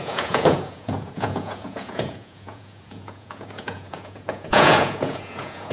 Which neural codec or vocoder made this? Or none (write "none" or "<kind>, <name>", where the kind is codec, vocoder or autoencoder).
vocoder, Vocos